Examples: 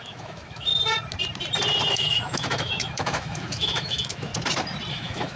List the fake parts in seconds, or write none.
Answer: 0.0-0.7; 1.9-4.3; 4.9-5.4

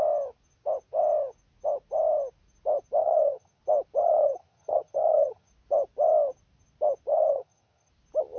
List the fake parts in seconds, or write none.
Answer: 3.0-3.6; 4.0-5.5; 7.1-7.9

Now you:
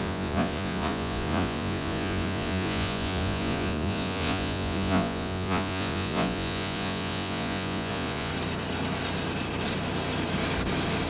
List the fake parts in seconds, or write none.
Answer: 0.0-8.3